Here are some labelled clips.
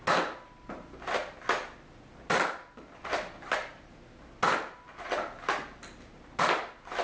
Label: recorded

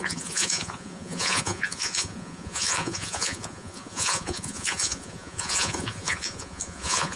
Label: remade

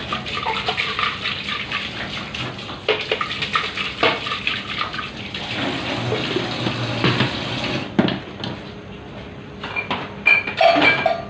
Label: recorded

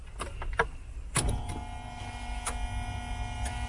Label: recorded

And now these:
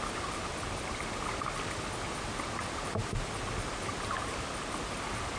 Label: recorded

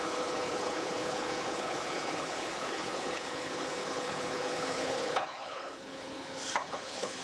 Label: remade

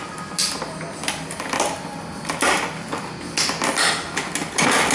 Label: recorded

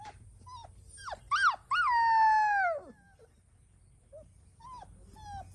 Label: recorded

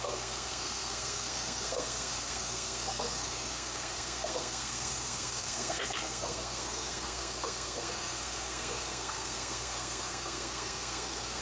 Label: remade